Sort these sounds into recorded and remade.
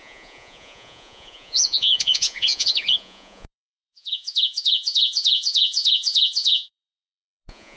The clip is remade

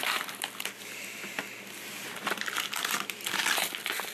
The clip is recorded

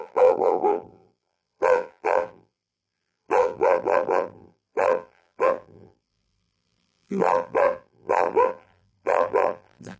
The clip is remade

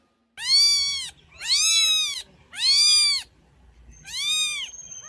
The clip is recorded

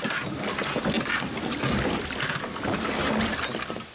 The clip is recorded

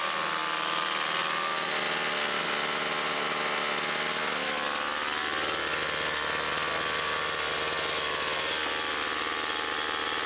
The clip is recorded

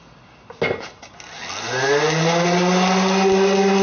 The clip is recorded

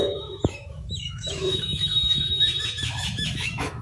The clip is remade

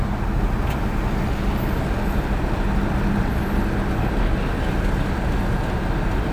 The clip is recorded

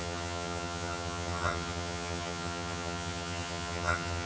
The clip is remade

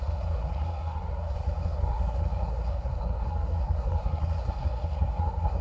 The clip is remade